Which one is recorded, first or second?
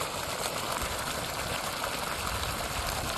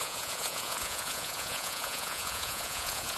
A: first